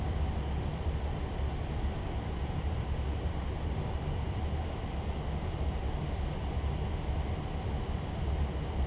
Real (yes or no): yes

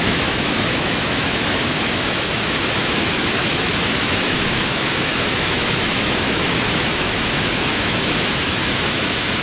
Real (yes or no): no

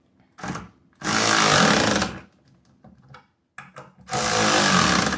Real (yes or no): yes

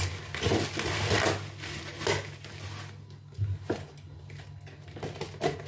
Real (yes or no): yes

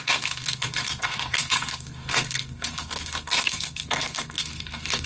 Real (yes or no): no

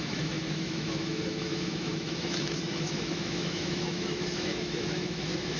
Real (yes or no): no